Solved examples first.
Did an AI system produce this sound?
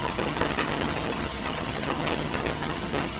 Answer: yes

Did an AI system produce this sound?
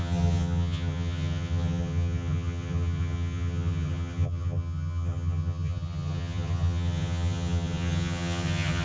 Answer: yes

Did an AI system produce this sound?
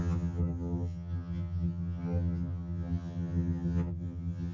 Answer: yes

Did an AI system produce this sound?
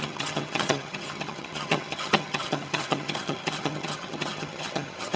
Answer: yes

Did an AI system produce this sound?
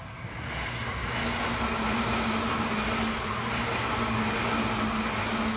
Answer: no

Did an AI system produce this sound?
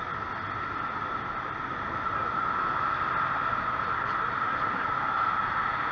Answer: no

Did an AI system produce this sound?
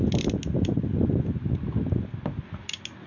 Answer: no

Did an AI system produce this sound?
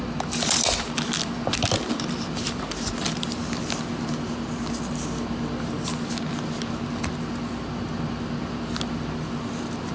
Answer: no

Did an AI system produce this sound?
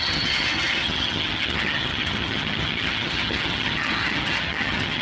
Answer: yes